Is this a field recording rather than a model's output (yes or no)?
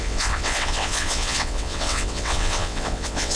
no